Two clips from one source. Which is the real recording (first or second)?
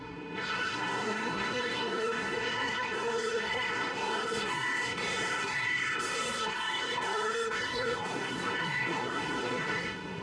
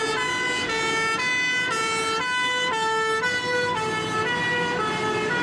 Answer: second